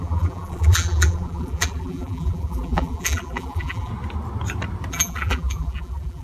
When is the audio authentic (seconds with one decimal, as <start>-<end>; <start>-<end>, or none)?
3.9-4.9